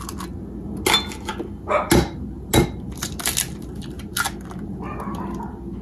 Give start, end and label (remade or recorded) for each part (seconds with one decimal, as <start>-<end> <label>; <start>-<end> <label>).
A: 0.0-5.8 recorded